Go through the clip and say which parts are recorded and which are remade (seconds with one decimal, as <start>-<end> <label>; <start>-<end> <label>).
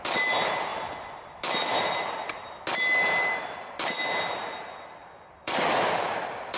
0.0-5.0 recorded; 5.0-5.6 remade; 5.6-6.6 recorded